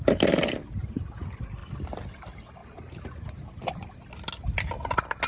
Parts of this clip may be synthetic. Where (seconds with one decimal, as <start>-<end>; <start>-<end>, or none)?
none